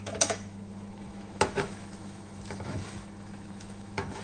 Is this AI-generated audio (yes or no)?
yes